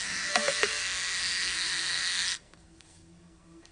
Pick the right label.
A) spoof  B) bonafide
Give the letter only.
A